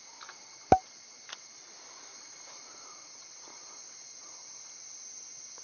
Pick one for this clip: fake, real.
real